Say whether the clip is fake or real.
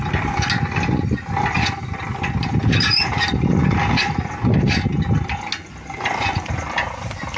real